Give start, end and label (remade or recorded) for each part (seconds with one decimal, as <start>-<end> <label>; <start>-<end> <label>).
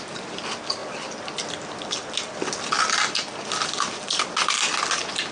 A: 0.0-5.3 recorded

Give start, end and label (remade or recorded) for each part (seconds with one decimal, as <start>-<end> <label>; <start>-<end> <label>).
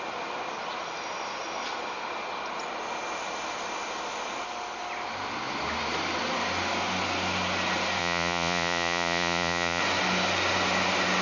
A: 0.0-8.0 recorded; 8.0-9.8 remade; 9.8-11.2 recorded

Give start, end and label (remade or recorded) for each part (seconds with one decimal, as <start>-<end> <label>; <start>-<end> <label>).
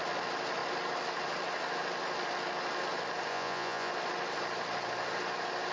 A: 0.0-3.3 recorded; 3.3-3.9 remade; 3.9-5.7 recorded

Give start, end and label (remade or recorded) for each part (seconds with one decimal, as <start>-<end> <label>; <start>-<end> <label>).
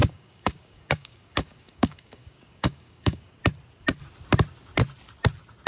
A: 0.0-3.4 remade; 3.4-5.7 recorded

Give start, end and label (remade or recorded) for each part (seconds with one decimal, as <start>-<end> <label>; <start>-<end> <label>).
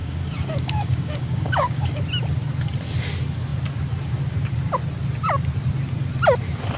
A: 0.0-2.0 remade; 2.0-6.8 recorded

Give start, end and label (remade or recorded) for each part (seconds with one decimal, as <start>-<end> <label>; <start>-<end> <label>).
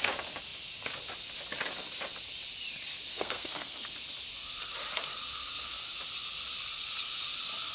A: 0.0-3.1 recorded; 3.1-3.9 remade; 3.9-7.7 recorded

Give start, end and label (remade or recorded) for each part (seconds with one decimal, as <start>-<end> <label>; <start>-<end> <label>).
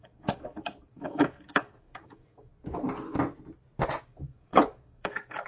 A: 0.0-2.5 remade; 2.5-4.0 recorded; 4.0-5.5 remade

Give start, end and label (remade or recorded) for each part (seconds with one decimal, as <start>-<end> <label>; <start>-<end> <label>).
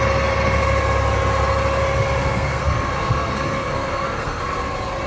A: 0.0-2.2 recorded; 2.2-4.4 remade; 4.4-5.1 recorded